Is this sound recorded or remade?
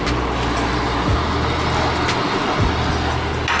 recorded